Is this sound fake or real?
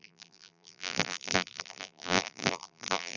fake